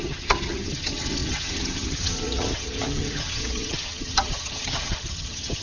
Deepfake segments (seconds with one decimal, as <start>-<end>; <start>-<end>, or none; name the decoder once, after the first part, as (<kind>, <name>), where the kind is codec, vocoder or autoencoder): 0.0-5.6 (vocoder, HiFi-GAN)